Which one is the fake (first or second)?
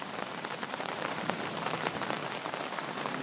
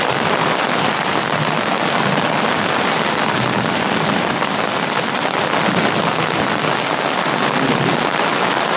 first